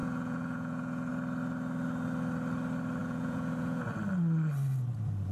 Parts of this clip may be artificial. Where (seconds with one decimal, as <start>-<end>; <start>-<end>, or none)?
0.0-1.1; 3.0-3.8